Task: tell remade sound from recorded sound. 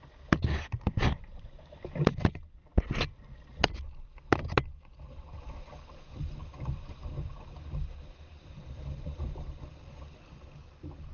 recorded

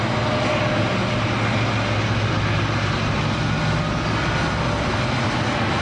recorded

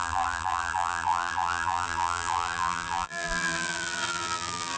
remade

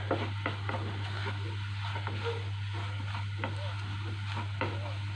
recorded